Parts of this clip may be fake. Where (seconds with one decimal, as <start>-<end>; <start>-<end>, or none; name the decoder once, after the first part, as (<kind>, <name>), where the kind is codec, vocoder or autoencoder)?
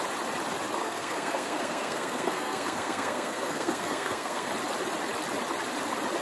0.8-4.5 (codec, SNAC)